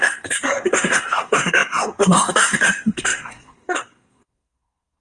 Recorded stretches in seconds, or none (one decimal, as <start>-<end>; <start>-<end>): none